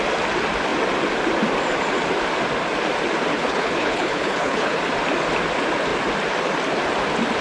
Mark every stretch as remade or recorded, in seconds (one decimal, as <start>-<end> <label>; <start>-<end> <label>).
0.0-3.3 recorded; 3.3-4.8 remade; 4.8-7.4 recorded